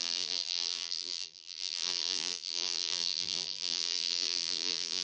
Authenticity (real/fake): fake